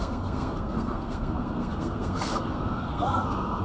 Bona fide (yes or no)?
no